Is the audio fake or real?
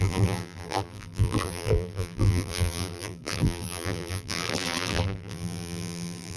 fake